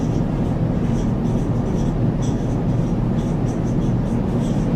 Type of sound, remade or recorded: recorded